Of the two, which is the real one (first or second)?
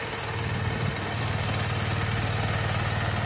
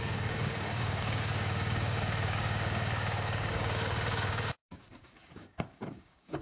first